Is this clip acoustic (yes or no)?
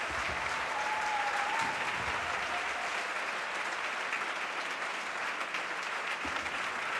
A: yes